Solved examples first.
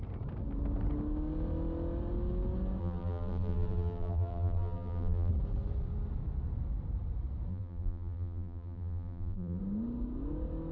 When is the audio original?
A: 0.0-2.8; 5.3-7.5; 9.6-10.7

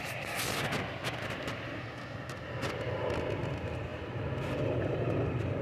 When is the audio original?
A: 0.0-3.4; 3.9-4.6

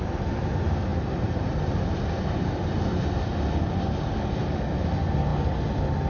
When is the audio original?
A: 0.0-0.9; 3.2-6.1